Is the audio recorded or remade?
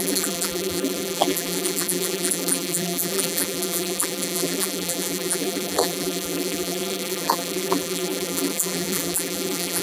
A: remade